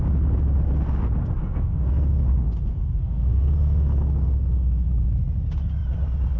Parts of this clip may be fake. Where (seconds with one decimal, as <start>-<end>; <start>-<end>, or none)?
1.4-4.9